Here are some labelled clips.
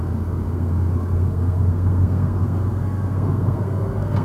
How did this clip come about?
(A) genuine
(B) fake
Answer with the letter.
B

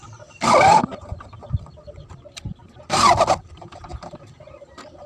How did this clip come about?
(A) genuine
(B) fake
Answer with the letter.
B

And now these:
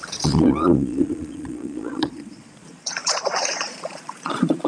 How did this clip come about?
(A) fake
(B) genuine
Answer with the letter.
A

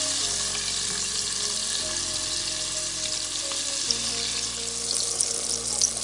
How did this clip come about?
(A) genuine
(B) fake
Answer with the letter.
A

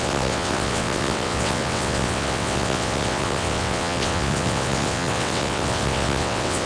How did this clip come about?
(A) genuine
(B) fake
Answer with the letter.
B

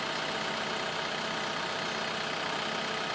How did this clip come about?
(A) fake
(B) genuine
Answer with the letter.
B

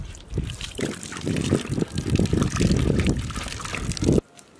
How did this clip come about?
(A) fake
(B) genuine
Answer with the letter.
B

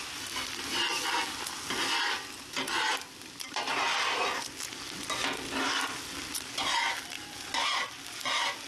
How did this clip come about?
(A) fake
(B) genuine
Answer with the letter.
B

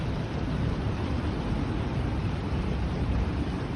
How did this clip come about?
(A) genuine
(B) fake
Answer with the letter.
B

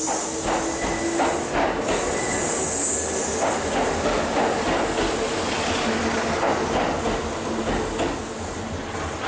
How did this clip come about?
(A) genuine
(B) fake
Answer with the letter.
A